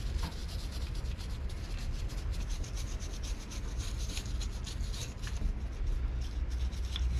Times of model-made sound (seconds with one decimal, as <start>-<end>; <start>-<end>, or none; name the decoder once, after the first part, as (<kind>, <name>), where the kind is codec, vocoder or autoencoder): none